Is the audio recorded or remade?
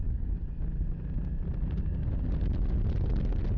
recorded